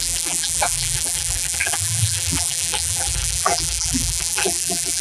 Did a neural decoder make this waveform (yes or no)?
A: yes